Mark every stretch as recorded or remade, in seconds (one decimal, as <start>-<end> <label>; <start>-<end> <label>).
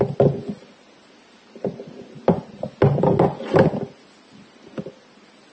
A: 0.0-5.5 recorded